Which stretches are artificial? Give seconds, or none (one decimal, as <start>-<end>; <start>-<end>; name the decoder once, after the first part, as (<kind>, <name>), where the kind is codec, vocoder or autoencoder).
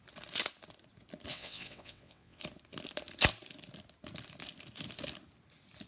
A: 1.3-2.4 (vocoder, WaveNeXt)